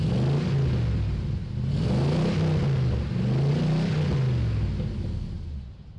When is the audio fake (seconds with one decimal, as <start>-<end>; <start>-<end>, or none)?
none